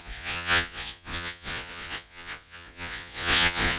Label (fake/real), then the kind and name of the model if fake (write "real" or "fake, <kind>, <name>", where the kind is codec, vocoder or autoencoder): fake, vocoder, Vocos